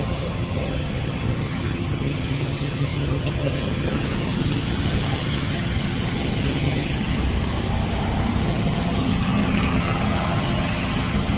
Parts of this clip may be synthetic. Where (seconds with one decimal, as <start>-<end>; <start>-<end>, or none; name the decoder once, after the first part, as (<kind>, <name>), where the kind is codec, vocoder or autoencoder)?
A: 0.0-7.2 (vocoder, HiFi-GAN); 8.4-11.4